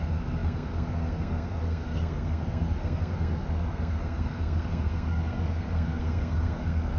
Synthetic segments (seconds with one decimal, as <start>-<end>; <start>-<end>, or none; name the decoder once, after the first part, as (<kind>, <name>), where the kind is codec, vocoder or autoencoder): 0.0-7.0 (codec, SNAC)